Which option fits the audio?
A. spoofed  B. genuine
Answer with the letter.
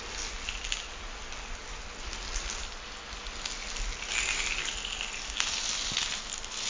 B